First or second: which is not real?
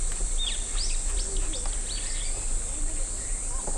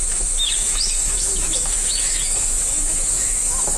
second